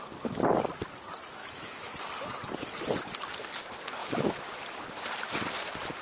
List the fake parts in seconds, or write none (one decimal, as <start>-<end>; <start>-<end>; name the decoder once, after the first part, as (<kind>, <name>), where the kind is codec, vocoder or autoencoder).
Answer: 1.4-1.9 (autoencoder, DAC-VAE); 4.0-4.5